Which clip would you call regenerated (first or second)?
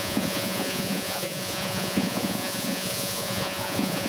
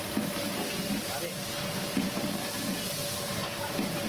first